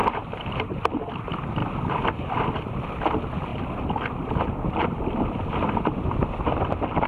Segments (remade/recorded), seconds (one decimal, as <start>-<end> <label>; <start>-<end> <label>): 0.0-1.0 remade; 1.0-7.1 recorded